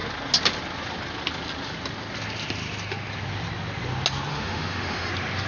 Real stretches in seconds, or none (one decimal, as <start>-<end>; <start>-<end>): 0.0-4.3; 5.1-5.5